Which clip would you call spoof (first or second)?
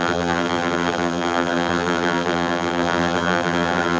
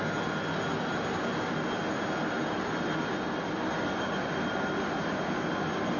first